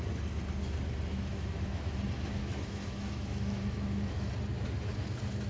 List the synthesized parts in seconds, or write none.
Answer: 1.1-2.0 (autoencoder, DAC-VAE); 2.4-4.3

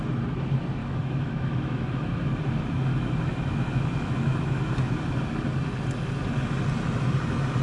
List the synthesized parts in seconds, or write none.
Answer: 0.8-2.4 (autoencoder, DAC-VAE); 2.9-4.7